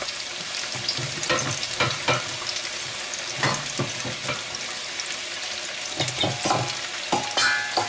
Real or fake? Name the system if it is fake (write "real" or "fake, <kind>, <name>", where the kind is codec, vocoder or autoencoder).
real